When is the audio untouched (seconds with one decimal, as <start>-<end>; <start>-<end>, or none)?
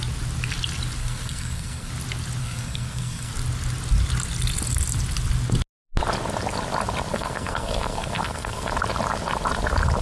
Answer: 0.0-1.0; 1.9-2.4; 3.3-7.1; 8.7-10.0